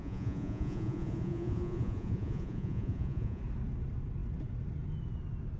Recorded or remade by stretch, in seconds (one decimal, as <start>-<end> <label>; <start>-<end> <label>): 0.0-3.4 remade; 3.4-5.6 recorded